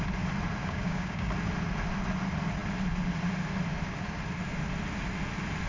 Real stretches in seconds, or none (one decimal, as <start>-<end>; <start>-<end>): 0.0-0.6; 1.3-5.7